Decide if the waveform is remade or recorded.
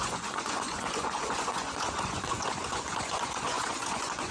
remade